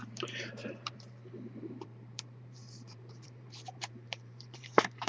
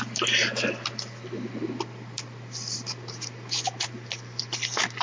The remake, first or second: first